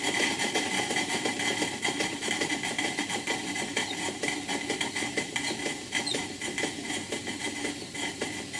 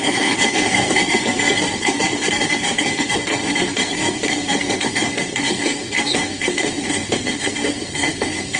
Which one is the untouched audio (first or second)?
first